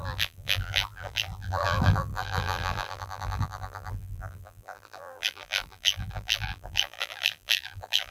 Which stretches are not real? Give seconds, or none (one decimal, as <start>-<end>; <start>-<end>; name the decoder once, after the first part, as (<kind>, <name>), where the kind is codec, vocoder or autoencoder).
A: 0.0-8.1 (vocoder, BigVGAN v2)